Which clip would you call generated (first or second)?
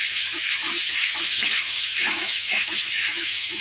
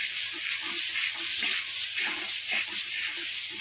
first